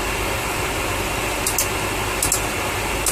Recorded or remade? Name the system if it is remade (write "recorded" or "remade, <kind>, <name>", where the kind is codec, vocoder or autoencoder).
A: recorded